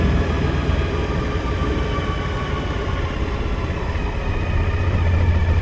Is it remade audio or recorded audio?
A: recorded